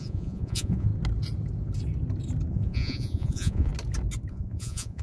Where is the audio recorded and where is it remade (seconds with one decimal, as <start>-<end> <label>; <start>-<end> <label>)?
0.0-0.9 remade; 0.9-2.5 recorded; 2.5-3.7 remade; 3.7-4.3 recorded; 4.3-5.0 remade

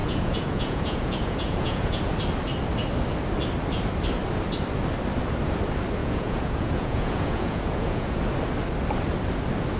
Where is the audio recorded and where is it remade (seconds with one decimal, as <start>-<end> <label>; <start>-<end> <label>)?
0.0-2.0 remade; 2.0-6.0 recorded; 6.0-8.2 remade; 8.2-9.8 recorded

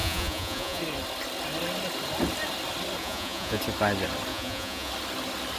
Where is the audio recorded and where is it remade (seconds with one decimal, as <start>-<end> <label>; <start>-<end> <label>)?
0.0-0.8 remade; 0.8-3.0 recorded; 3.0-3.6 remade; 3.6-4.3 recorded; 4.3-4.9 remade; 4.9-5.6 recorded

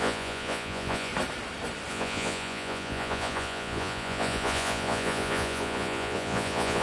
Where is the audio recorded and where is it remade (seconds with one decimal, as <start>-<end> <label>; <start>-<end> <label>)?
0.0-1.1 remade; 1.1-1.9 recorded; 1.9-6.8 remade

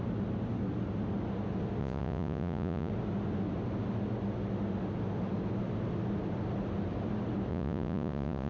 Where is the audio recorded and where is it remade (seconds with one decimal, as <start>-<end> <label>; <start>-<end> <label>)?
0.0-1.8 recorded; 1.8-2.9 remade; 2.9-7.5 recorded; 7.5-8.5 remade

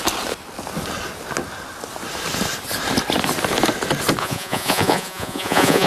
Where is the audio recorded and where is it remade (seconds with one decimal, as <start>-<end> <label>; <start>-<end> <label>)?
0.0-4.2 recorded; 4.2-5.9 remade

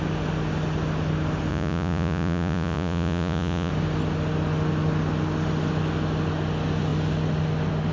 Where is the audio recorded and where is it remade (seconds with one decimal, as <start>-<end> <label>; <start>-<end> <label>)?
0.0-1.5 recorded; 1.5-3.7 remade; 3.7-7.9 recorded

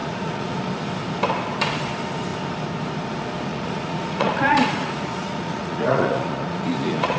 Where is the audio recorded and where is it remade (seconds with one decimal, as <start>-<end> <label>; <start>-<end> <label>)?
0.0-0.6 remade; 0.6-3.5 recorded; 3.5-7.2 remade